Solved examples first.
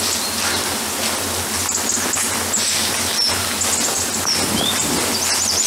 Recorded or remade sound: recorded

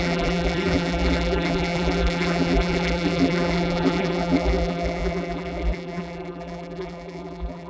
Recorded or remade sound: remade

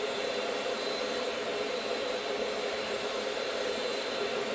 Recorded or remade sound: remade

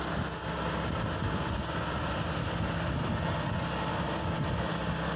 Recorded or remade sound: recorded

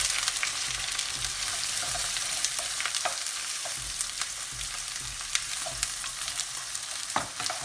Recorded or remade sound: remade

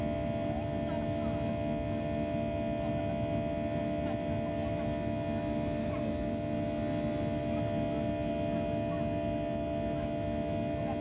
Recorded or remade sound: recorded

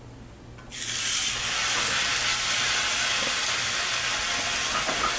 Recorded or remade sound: recorded